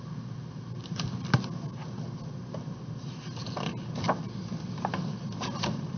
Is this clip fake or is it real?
real